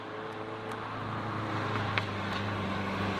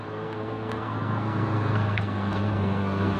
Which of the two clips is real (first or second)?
first